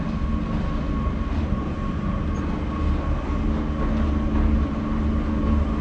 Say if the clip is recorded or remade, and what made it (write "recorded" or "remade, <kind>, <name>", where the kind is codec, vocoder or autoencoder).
recorded